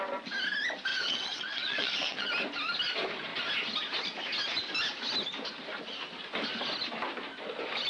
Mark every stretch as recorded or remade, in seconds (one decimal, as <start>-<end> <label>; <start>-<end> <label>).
0.0-0.9 recorded; 0.9-2.3 remade; 2.3-7.9 recorded